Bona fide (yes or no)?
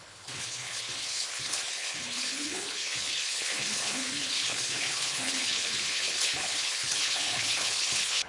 no